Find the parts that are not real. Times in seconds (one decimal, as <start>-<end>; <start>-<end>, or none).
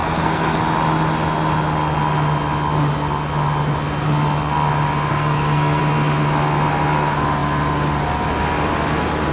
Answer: 0.0-0.6; 5.1-5.8